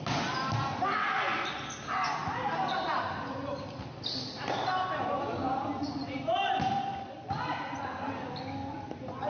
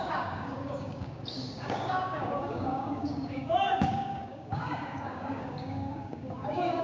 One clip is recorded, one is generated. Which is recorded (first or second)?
first